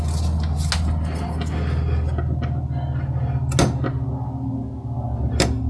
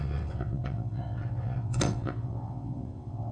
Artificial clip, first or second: second